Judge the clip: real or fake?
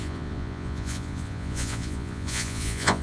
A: fake